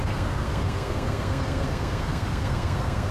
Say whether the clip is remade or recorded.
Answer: remade